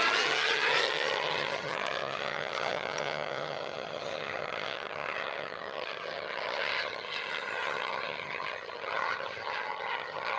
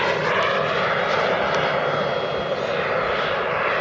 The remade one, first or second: first